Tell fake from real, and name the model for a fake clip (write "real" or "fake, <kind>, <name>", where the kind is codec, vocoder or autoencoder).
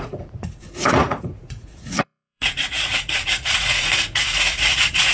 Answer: fake, vocoder, Vocos